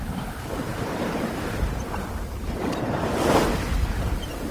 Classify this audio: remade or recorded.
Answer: remade